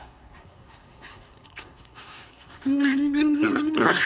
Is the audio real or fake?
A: fake